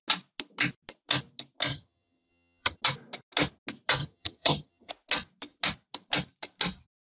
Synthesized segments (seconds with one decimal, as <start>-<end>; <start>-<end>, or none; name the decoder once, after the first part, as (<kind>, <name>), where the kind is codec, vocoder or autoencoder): 1.7-2.8 (vocoder, HiFi-GAN); 4.0-4.9